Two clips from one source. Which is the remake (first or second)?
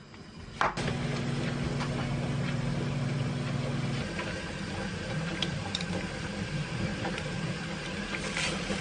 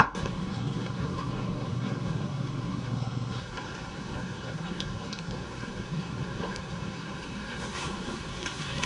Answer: second